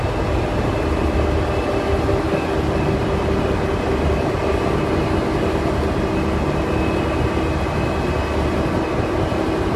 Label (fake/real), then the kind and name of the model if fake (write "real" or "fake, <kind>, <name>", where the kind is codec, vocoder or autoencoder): real